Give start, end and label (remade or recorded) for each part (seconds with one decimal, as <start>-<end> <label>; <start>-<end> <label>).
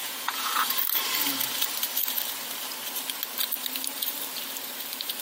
0.0-0.7 remade; 0.7-5.2 recorded